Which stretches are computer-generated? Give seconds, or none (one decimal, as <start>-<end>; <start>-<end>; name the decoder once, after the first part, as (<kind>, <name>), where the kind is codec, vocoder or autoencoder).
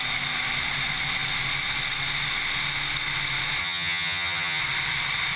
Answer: 3.6-4.6 (vocoder, HiFi-GAN)